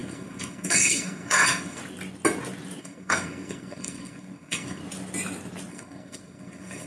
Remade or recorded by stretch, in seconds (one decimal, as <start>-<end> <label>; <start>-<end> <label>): 0.0-1.8 remade; 1.8-2.8 recorded; 2.8-4.8 remade; 4.8-5.7 recorded; 5.7-6.9 remade